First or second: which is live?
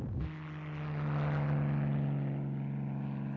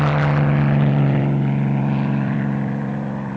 first